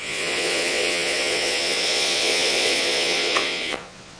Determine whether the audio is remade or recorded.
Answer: remade